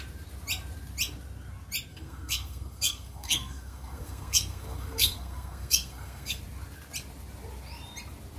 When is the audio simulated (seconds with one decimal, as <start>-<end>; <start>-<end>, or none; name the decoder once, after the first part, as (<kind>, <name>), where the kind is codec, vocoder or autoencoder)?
1.9-6.4 (codec, SNAC)